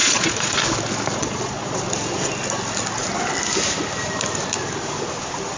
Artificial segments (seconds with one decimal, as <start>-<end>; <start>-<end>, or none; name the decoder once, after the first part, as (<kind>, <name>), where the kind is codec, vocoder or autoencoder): 0.0-0.6 (vocoder, Vocos); 1.2-1.8